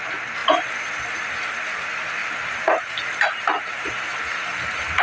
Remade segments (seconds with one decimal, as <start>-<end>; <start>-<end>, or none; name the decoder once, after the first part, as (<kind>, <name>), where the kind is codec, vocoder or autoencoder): 2.2-4.2 (vocoder, BigVGAN v2)